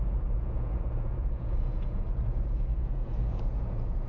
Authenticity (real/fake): fake